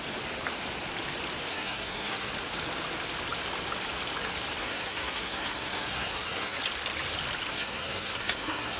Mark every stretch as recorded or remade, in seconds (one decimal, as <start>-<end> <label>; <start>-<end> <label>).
0.0-1.5 recorded; 1.5-2.3 remade; 2.3-4.6 recorded; 4.6-6.6 remade; 6.6-7.5 recorded; 7.5-8.8 remade

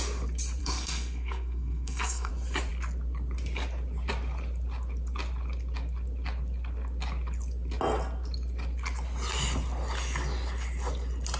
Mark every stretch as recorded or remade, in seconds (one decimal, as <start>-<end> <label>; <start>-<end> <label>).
0.0-0.6 recorded; 0.6-2.3 remade; 2.3-11.4 recorded

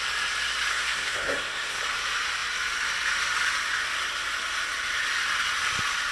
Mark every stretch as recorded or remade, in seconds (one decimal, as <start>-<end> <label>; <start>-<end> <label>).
0.0-0.7 recorded; 0.7-1.8 remade; 1.8-6.1 recorded

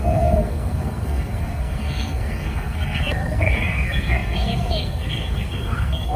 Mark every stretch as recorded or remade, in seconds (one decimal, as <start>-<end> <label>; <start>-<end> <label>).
0.0-6.2 remade

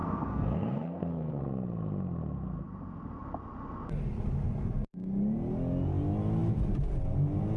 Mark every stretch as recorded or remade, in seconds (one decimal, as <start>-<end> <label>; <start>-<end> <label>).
0.0-1.4 remade; 1.4-7.6 recorded

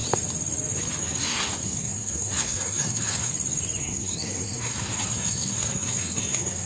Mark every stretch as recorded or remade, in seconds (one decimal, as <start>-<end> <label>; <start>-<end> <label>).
0.0-1.0 recorded; 1.0-3.3 remade; 3.3-3.8 recorded; 3.8-6.7 remade